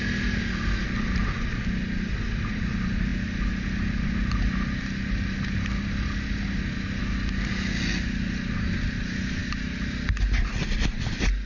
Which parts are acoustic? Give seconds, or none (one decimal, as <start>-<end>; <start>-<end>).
0.0-11.5